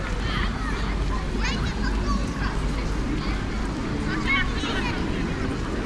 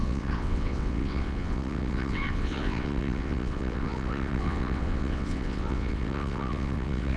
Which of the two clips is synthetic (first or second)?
second